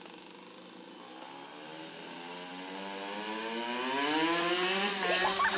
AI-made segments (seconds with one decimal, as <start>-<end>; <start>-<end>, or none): none